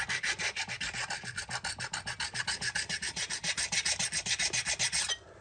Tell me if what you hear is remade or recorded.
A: recorded